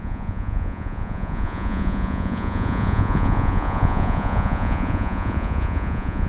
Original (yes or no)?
no